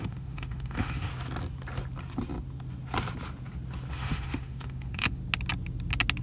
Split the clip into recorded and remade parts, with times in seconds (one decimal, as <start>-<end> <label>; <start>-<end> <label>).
0.0-1.1 remade; 1.1-3.9 recorded; 3.9-5.2 remade; 5.2-6.2 recorded